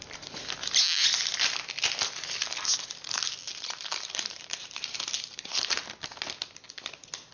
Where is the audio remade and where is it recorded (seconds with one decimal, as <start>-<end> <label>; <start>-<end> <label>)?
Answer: 0.0-3.5 recorded; 3.5-5.8 remade; 5.8-7.3 recorded